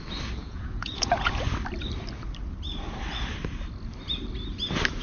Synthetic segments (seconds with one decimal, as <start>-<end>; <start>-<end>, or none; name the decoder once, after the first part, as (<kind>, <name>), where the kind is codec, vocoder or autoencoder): 0.4-1.3 (vocoder, Vocos)